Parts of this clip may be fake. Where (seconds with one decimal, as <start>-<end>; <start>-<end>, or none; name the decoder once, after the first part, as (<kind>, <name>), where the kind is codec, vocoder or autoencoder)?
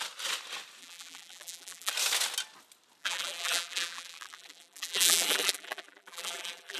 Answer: 0.8-1.9 (vocoder, BigVGAN v2); 3.0-6.8